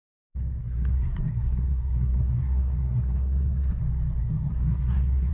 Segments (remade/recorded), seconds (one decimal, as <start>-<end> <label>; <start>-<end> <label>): 0.0-0.6 recorded; 0.6-3.8 remade; 3.8-4.2 recorded; 4.2-5.3 remade